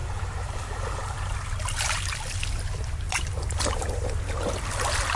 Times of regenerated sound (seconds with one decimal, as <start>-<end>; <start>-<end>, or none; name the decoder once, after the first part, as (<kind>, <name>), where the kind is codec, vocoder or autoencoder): none